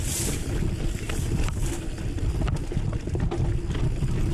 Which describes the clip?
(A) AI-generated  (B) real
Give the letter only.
B